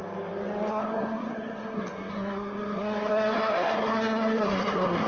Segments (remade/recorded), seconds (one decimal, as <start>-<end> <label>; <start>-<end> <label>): 0.0-0.7 recorded; 0.7-5.1 remade